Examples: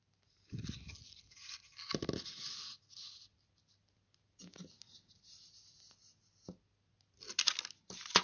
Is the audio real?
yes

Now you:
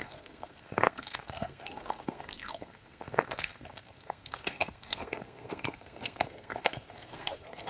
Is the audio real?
no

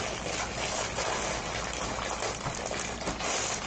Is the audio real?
yes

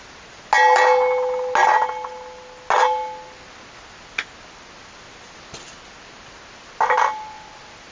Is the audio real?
yes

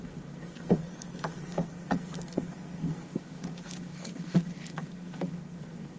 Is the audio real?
no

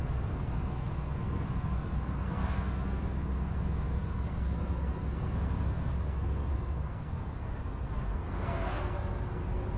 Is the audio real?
no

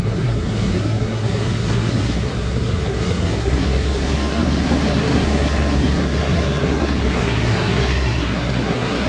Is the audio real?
no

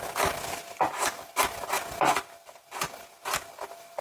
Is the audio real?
yes